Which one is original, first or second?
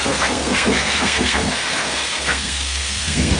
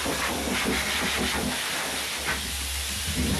second